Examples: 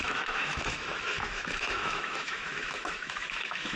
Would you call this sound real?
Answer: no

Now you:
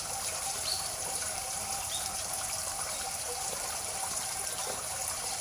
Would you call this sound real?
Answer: no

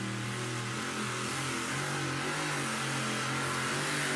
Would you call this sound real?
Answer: yes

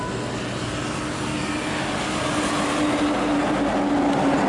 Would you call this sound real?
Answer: yes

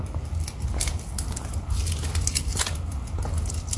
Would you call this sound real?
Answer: yes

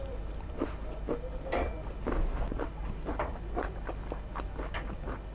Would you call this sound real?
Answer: yes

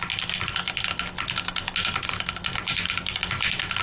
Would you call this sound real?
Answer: yes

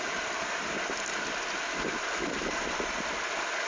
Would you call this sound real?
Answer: yes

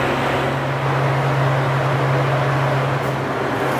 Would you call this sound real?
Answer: yes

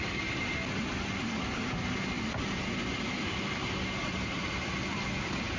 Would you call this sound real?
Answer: no